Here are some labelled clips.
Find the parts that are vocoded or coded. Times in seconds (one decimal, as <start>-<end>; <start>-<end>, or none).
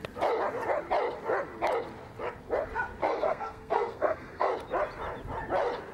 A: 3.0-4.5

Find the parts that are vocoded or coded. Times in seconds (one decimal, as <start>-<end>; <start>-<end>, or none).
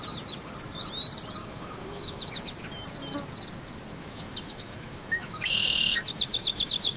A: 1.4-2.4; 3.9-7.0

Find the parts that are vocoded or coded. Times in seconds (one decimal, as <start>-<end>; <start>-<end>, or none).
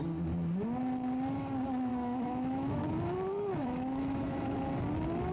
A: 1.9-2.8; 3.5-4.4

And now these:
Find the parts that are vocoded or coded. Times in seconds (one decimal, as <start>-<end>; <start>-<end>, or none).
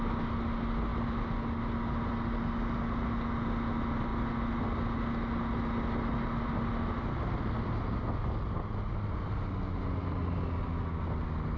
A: none